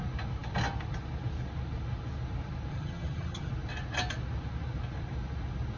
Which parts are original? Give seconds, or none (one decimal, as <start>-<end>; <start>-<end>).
0.0-2.7; 3.5-5.8